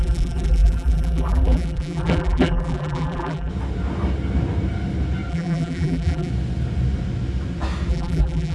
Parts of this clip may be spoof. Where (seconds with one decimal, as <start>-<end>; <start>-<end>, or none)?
0.0-3.5; 5.3-6.3; 7.9-8.5